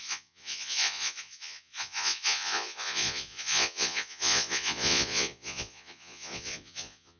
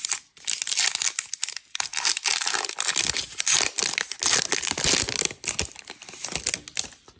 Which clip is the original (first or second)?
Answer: second